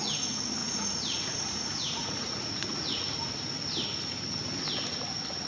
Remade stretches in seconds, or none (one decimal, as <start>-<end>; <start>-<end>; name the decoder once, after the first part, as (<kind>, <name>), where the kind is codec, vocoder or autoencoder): 0.6-3.3 (vocoder, Vocos)